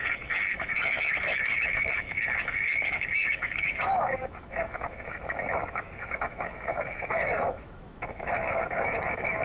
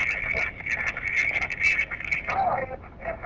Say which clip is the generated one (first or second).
first